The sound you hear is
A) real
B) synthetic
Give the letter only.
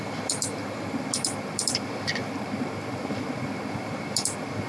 A